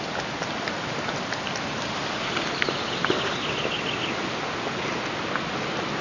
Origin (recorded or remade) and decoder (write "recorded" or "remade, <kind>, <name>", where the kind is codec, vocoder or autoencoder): recorded